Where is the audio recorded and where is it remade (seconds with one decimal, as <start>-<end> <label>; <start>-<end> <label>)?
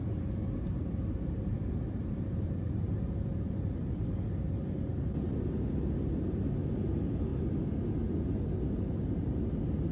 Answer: 0.0-0.4 recorded; 0.4-4.8 remade; 4.8-9.9 recorded